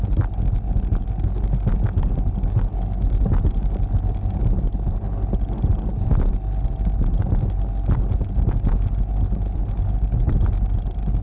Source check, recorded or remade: recorded